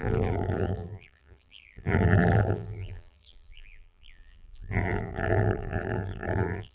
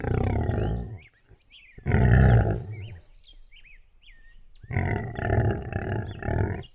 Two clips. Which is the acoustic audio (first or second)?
second